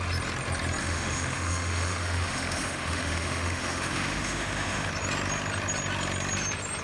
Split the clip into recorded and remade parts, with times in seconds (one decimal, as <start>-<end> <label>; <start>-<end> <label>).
0.0-0.8 recorded; 0.8-4.9 remade; 4.9-6.8 recorded